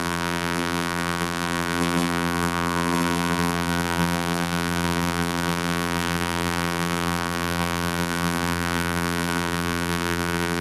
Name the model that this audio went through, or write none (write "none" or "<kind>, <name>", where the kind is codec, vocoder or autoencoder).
vocoder, BigVGAN v2